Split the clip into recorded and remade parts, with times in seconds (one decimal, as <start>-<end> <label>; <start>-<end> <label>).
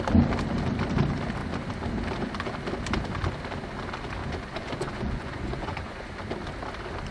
0.0-4.2 recorded; 4.2-6.1 remade; 6.1-7.1 recorded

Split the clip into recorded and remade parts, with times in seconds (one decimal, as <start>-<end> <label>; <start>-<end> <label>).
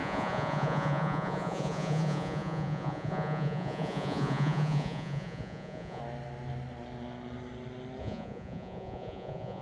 0.0-6.0 remade; 6.0-8.0 recorded; 8.0-9.6 remade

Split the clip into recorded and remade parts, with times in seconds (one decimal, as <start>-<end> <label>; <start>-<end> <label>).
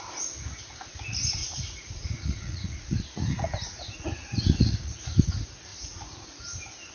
0.0-1.4 recorded; 1.4-5.3 remade; 5.3-5.7 recorded; 5.7-6.4 remade; 6.4-6.9 recorded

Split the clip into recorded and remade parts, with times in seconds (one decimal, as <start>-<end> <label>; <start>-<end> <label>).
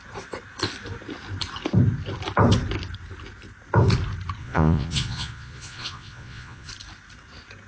0.0-4.4 recorded; 4.4-6.7 remade; 6.7-7.7 recorded